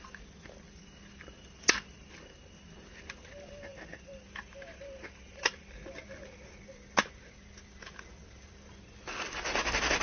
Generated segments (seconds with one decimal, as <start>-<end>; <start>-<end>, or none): none